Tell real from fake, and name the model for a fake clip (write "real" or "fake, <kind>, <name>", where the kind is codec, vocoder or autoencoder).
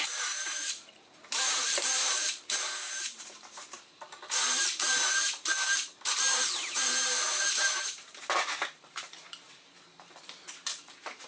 fake, vocoder, BigVGAN v2